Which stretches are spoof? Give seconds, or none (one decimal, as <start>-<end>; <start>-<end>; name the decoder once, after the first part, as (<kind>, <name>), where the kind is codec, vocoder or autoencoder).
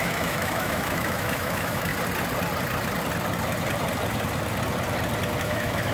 0.0-1.9 (autoencoder, DAC-VAE); 5.4-5.9